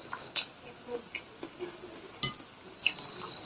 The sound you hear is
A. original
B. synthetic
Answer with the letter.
A